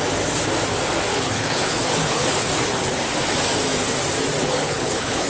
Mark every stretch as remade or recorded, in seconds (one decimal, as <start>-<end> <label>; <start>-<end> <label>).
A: 0.0-1.1 recorded; 1.1-3.0 remade; 3.0-4.4 recorded; 4.4-5.3 remade